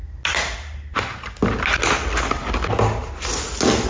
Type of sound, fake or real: real